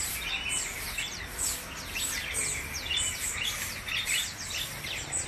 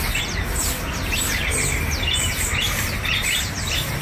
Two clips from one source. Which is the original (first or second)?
first